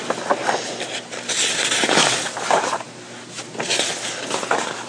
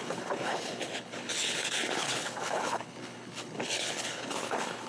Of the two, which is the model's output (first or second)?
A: second